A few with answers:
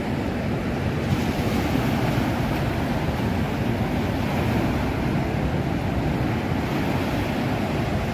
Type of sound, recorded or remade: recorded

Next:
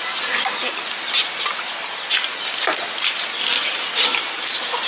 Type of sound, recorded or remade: recorded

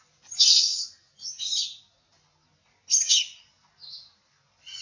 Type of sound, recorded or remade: recorded